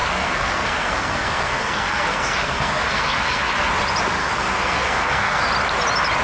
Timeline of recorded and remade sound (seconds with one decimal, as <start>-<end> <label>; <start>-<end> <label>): 0.0-3.7 remade; 3.7-4.2 recorded; 4.2-5.5 remade; 5.5-6.2 recorded